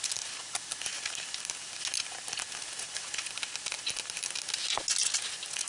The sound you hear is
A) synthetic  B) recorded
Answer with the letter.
B